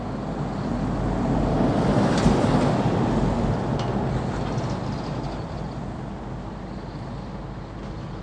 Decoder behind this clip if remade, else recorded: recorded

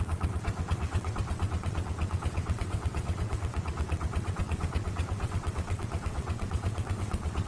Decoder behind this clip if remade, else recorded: remade, vocoder, WaveNeXt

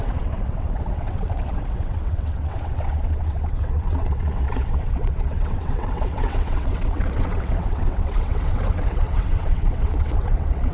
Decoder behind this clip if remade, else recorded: remade, vocoder, WaveNeXt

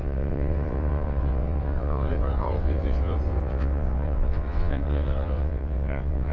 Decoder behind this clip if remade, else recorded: remade, vocoder, WaveNeXt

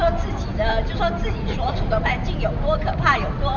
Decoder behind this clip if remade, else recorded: recorded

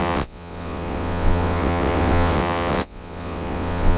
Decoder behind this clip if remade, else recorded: remade, vocoder, WaveNeXt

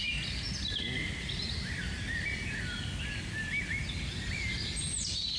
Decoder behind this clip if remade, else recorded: recorded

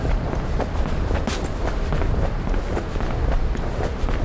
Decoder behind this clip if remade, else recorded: recorded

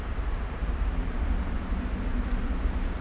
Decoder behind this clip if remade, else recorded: recorded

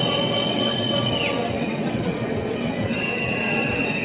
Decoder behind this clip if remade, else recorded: remade, vocoder, WaveNeXt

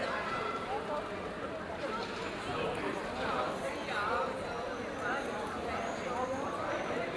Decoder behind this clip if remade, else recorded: recorded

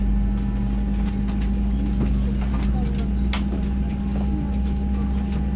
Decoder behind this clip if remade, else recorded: recorded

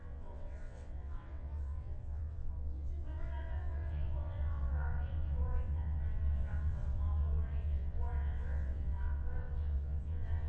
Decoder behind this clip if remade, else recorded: remade, vocoder, WaveNeXt